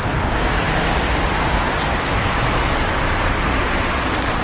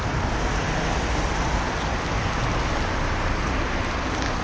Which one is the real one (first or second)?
second